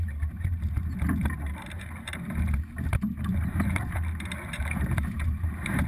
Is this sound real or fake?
fake